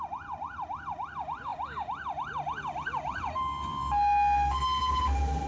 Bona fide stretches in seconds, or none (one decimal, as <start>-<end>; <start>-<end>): 0.0-5.5

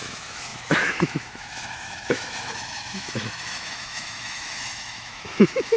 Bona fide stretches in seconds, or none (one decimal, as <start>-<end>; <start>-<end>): none

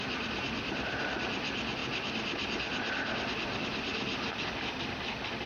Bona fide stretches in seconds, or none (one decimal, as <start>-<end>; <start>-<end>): 1.8-4.5

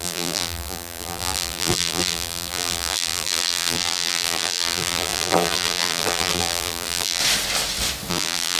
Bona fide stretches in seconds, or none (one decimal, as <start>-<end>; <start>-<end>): 7.2-8.1

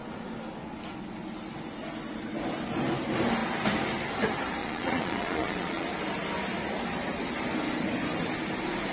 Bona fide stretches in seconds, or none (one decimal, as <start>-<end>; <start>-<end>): 0.0-4.6; 5.9-8.9